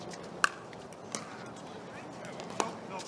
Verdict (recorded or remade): recorded